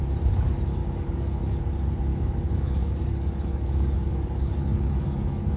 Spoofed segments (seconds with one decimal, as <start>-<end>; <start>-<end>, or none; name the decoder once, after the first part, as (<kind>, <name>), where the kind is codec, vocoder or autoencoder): 0.8-1.6 (codec, DAC); 2.1-5.6